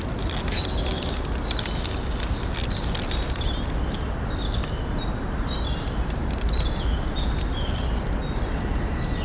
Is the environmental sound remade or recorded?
recorded